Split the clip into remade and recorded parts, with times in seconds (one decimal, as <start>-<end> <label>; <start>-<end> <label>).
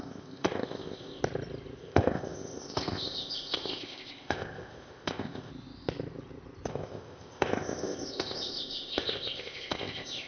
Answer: 0.0-1.2 remade; 1.2-1.8 recorded; 1.8-5.5 remade; 5.5-6.7 recorded; 6.7-10.3 remade